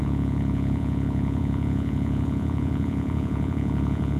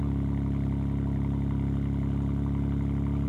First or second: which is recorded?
second